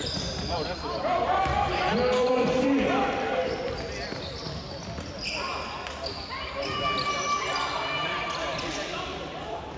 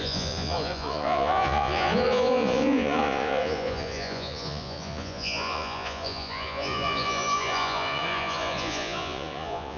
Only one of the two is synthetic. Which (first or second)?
second